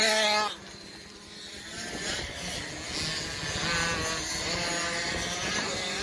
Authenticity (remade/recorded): recorded